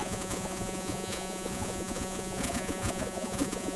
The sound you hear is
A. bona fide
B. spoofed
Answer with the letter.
B